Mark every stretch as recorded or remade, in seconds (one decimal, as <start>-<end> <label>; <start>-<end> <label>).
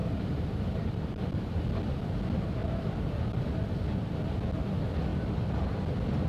0.0-1.2 remade; 1.2-2.6 recorded; 2.6-3.4 remade; 3.4-5.1 recorded; 5.1-5.8 remade; 5.8-6.3 recorded